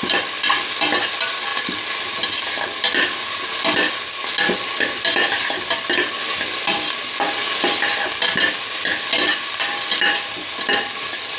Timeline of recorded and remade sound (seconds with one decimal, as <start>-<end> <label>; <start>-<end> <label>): 0.0-1.5 recorded; 1.5-2.1 remade; 2.1-11.4 recorded